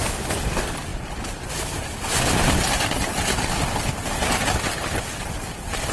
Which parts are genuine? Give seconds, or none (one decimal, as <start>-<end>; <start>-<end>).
0.0-5.9